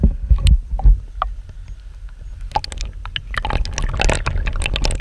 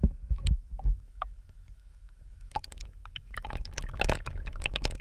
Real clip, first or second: first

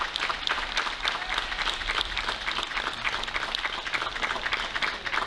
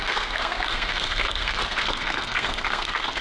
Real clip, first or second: first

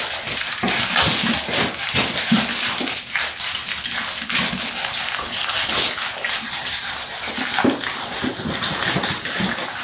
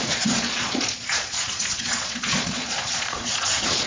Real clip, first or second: first